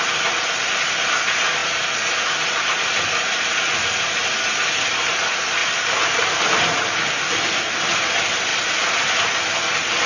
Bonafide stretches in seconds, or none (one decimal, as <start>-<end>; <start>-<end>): 0.0-5.6; 7.1-10.1

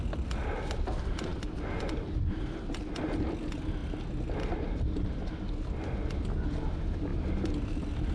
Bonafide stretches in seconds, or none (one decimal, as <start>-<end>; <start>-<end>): 0.0-8.1

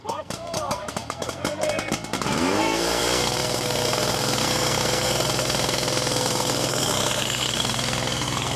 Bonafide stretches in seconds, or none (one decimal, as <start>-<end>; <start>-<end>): none

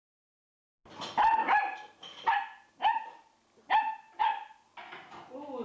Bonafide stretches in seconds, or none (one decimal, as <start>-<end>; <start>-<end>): 0.0-5.6

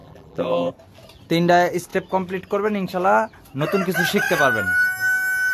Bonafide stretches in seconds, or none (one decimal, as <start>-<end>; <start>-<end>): 0.7-5.5

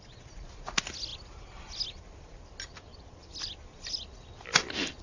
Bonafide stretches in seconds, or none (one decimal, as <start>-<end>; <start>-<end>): 0.0-5.0

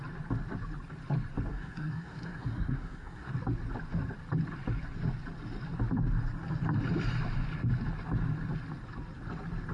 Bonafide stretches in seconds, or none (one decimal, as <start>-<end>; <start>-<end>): 0.0-1.5; 3.3-9.7

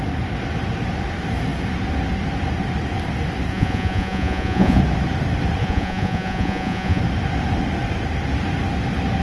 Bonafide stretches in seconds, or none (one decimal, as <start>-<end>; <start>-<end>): 0.0-3.5; 4.8-5.6; 7.0-9.2